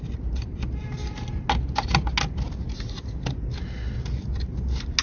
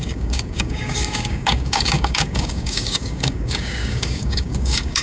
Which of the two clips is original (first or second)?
first